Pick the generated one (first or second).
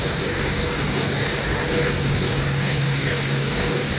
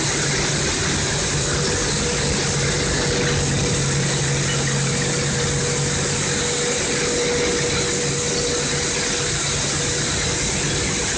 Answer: first